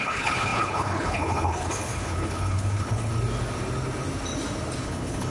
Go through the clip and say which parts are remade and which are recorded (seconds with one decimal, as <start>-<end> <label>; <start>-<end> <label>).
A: 0.0-3.1 remade; 3.1-4.8 recorded; 4.8-5.3 remade